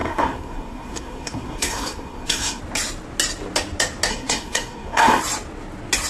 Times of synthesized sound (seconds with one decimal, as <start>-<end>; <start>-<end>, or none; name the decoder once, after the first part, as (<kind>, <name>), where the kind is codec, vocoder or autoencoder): 0.0-2.6 (codec, SNAC); 4.1-5.2